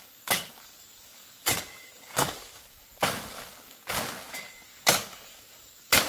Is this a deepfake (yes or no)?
yes